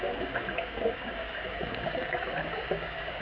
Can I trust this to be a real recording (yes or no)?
no